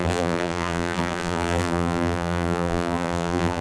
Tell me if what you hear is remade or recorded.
remade